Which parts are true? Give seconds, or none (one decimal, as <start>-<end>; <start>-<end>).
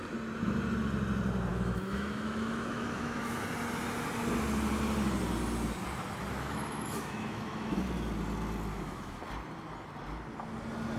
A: 0.0-1.5; 3.4-6.3; 7.8-8.7; 9.2-11.0